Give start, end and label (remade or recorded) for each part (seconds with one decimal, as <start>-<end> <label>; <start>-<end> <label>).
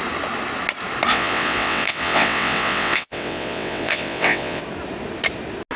0.0-1.1 recorded; 1.1-4.6 remade; 4.6-5.8 recorded